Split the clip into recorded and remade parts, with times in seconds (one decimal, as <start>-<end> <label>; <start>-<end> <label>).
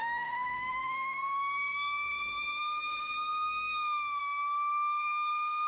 0.0-5.7 remade